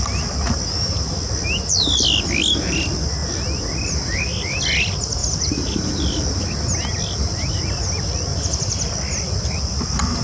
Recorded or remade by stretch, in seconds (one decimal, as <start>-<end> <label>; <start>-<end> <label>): 0.0-5.2 recorded; 5.2-6.4 remade; 6.4-8.3 recorded; 8.3-9.7 remade; 9.7-10.2 recorded